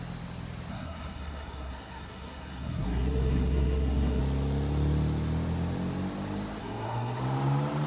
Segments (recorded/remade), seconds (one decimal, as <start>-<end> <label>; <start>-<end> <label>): 0.0-0.7 recorded; 0.7-4.2 remade; 4.2-6.6 recorded; 6.6-7.2 remade; 7.2-7.9 recorded